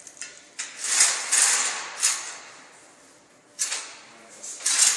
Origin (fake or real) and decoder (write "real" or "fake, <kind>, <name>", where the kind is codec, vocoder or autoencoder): real